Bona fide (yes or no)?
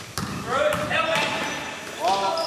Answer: yes